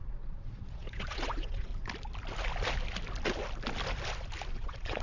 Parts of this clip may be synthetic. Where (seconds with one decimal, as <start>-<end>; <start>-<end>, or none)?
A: 0.0-1.7; 4.5-5.0